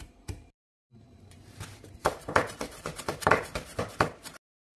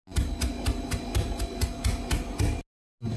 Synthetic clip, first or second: first